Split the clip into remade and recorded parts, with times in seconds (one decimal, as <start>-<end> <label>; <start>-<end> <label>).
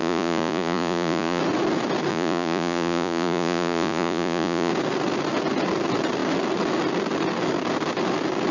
0.0-1.4 remade; 1.4-2.1 recorded; 2.1-4.7 remade; 4.7-8.5 recorded